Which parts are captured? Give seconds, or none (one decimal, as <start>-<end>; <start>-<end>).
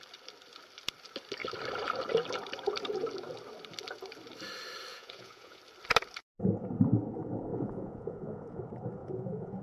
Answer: 0.0-4.9; 5.6-7.5; 8.6-9.0